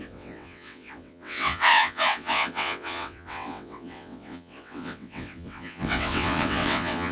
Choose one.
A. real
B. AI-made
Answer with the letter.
B